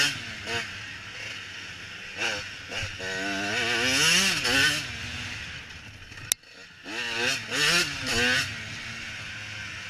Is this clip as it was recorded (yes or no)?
yes